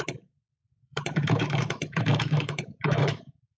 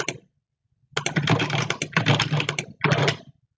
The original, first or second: second